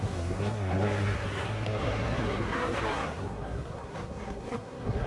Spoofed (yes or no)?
yes